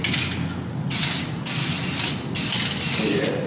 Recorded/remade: recorded